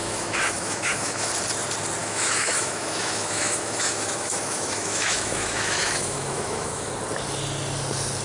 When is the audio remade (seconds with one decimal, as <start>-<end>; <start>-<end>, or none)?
0.0-1.3; 2.0-6.9